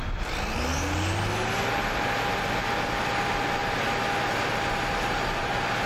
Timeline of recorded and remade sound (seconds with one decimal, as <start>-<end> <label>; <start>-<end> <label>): 0.0-5.9 recorded